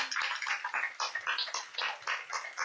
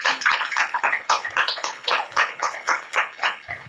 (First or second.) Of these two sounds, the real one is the first